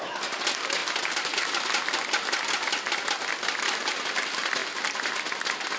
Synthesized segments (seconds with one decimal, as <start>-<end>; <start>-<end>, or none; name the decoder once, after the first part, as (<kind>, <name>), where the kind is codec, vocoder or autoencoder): none